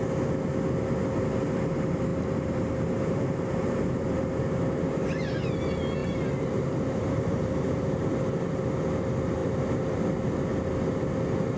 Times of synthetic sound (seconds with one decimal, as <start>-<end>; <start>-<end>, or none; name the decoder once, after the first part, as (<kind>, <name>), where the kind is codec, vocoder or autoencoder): 2.1-4.2 (vocoder, BigVGAN v2); 6.0-8.1; 9.4-10.1